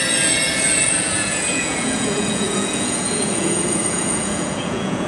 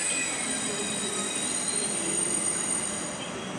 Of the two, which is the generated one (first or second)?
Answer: first